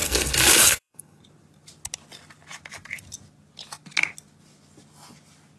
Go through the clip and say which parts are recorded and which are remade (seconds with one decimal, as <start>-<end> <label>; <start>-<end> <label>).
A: 0.0-1.2 remade; 1.2-5.6 recorded